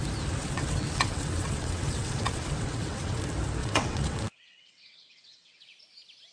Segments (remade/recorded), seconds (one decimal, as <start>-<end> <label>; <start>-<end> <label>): 0.0-0.4 recorded; 0.4-3.2 remade; 3.2-3.6 recorded; 3.6-5.6 remade; 5.6-6.3 recorded